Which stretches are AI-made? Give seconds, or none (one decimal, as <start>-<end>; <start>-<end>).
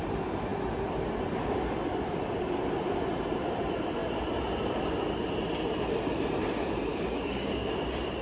6.9-7.5